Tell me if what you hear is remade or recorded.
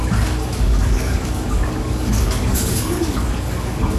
remade